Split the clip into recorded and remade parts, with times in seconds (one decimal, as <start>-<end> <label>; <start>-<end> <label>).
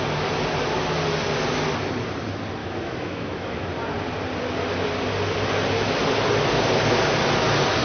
0.0-2.6 recorded; 2.6-3.7 remade; 3.7-7.8 recorded